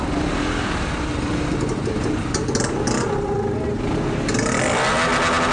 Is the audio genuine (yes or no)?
yes